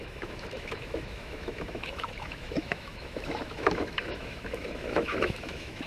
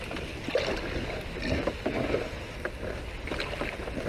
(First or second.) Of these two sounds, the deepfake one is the first